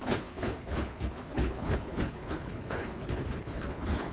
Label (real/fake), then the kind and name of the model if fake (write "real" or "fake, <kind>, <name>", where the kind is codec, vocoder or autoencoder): fake, codec, HILCodec